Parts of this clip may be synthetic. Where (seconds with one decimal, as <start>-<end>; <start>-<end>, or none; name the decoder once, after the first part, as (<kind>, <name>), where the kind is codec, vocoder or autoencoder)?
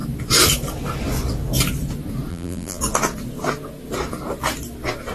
2.3-2.8 (vocoder, BigVGAN v2)